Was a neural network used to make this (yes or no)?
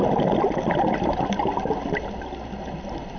no